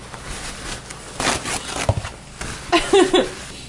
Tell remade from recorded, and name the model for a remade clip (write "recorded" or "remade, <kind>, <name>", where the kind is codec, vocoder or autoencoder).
recorded